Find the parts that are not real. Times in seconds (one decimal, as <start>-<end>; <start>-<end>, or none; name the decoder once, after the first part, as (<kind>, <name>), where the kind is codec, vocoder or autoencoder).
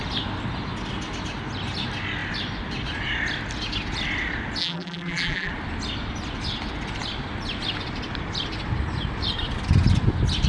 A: 4.6-5.5 (vocoder, BigVGAN v2)